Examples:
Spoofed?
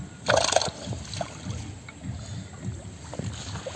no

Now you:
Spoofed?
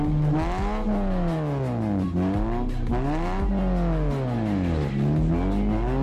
no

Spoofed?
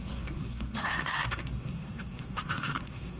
yes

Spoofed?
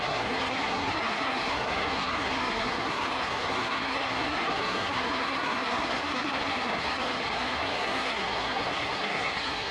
yes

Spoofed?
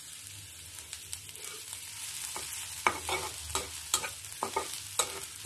no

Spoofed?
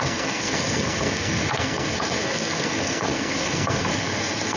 yes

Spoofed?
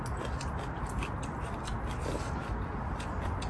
no